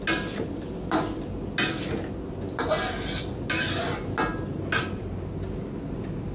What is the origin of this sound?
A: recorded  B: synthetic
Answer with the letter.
A